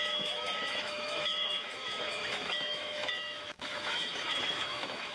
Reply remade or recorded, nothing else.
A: remade